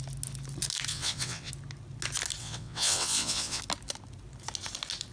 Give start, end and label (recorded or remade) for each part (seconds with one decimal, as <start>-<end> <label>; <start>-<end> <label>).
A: 0.0-0.9 recorded; 0.9-1.5 remade; 1.5-2.4 recorded; 2.4-3.6 remade; 3.6-5.1 recorded

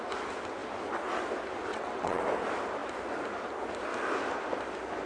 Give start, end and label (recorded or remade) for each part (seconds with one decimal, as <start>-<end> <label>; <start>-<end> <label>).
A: 0.0-1.7 recorded; 1.7-2.2 remade; 2.2-5.1 recorded

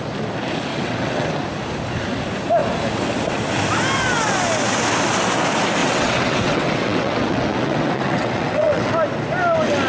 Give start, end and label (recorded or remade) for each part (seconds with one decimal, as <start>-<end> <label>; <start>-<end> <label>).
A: 0.0-0.7 recorded; 0.7-1.3 remade; 1.3-5.8 recorded; 5.8-8.9 remade; 8.9-9.9 recorded

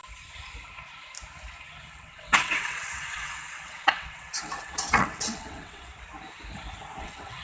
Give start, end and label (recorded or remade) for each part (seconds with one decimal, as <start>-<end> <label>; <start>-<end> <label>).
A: 0.0-1.9 recorded; 1.9-5.9 remade; 5.9-7.0 recorded; 7.0-7.4 remade

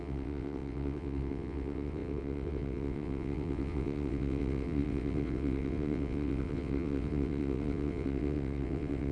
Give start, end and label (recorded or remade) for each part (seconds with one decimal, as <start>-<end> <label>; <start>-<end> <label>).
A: 0.0-9.1 remade